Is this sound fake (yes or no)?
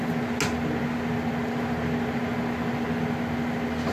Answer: no